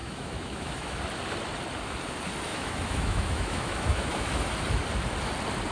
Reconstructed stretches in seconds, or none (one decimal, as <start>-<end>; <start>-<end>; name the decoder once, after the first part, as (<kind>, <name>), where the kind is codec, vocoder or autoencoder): 0.0-1.0 (autoencoder, DAC-VAE); 2.5-4.5